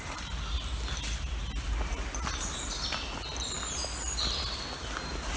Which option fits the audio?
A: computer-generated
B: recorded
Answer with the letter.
B